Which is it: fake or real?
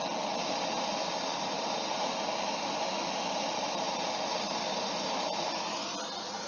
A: real